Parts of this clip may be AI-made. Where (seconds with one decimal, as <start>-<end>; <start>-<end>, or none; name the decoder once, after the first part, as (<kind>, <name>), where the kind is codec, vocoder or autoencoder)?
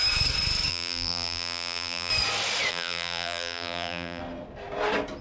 0.7-2.1 (vocoder, BigVGAN v2); 2.7-4.2